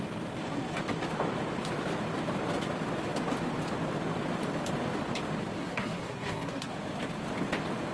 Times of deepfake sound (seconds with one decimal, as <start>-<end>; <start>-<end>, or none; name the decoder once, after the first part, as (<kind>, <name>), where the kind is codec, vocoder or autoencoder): 5.6-6.7 (codec, SNAC)